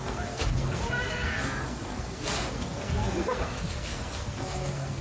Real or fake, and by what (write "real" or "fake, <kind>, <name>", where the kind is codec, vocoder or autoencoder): fake, codec, SNAC